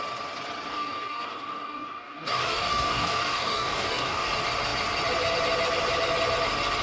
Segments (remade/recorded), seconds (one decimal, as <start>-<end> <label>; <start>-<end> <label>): 0.0-0.7 recorded; 0.7-4.3 remade; 4.3-6.8 recorded